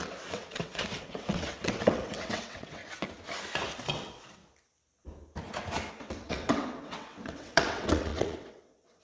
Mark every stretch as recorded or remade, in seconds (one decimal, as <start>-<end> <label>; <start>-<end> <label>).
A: 0.0-2.8 remade; 2.8-3.8 recorded; 3.8-4.4 remade; 4.4-5.9 recorded; 5.9-9.0 remade